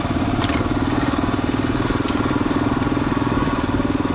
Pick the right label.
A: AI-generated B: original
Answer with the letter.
B